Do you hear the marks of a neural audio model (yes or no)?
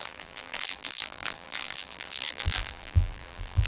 yes